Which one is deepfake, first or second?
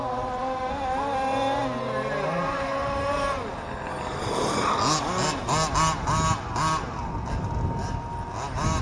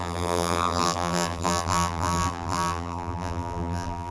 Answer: second